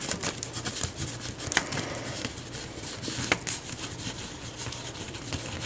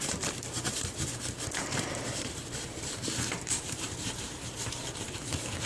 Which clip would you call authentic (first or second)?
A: first